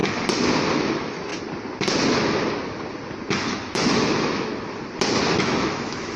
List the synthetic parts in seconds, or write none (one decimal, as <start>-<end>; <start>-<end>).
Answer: 0.7-1.3; 3.4-4.5; 5.4-6.2